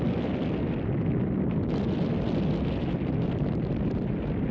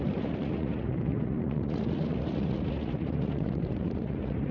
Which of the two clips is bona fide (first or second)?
first